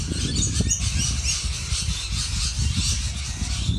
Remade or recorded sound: recorded